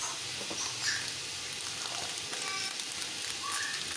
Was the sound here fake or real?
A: real